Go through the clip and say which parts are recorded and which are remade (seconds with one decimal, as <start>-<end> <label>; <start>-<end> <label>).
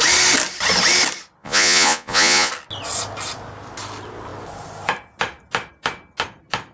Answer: 0.0-1.4 recorded; 1.4-2.5 remade; 2.5-6.7 recorded